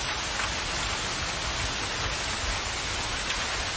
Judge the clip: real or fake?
real